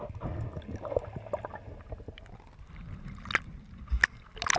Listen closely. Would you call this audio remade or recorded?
recorded